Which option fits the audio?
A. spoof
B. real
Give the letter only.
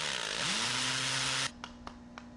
B